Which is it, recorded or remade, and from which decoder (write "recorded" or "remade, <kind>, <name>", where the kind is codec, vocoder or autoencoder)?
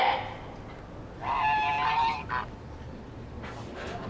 recorded